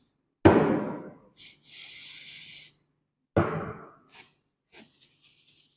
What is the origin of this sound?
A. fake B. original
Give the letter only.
B